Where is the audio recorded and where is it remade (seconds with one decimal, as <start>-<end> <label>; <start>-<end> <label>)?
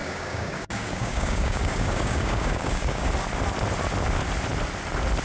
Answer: 0.0-3.1 remade; 3.1-5.2 recorded